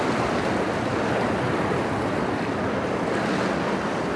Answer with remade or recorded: recorded